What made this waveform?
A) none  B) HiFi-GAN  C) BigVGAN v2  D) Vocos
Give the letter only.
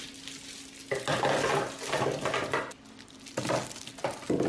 A